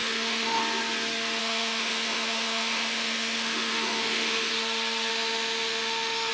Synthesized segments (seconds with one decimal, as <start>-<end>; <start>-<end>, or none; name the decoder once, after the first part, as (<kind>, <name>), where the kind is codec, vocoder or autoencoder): 0.0-0.6 (autoencoder, DAC-VAE); 1.4-4.5; 5.1-6.3

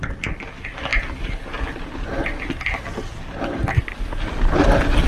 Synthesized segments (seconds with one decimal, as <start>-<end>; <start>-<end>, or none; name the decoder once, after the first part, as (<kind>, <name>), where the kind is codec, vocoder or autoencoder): none

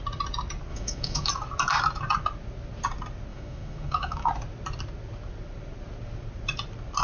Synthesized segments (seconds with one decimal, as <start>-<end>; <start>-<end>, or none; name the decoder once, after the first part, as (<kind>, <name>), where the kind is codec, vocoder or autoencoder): 0.7-1.3 (autoencoder, DAC-VAE); 3.3-4.3